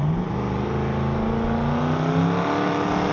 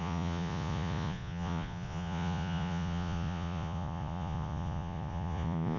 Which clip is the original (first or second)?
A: first